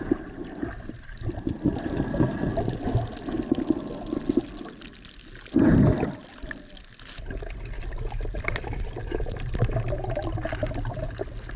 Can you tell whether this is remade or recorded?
recorded